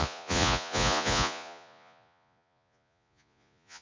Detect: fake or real fake